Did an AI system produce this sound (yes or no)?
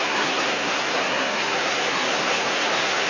yes